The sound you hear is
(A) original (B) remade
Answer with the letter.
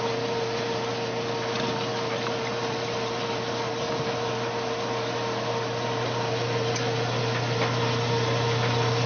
A